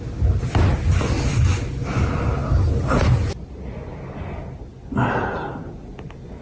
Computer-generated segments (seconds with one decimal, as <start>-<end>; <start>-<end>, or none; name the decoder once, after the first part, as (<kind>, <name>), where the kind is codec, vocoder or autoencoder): none